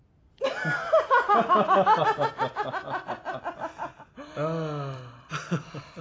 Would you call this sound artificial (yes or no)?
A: no